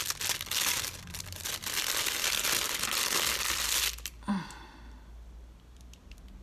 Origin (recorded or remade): recorded